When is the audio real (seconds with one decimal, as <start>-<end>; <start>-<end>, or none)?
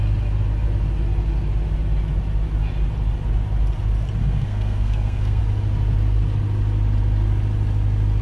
0.0-4.2; 5.4-8.2